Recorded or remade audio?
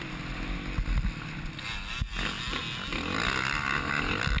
recorded